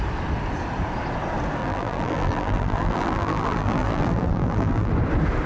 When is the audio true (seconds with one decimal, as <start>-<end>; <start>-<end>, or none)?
0.0-1.6; 4.9-5.5